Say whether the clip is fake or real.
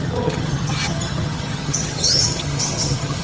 fake